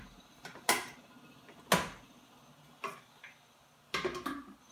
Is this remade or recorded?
recorded